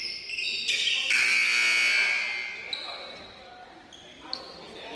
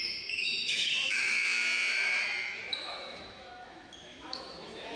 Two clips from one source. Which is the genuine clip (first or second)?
first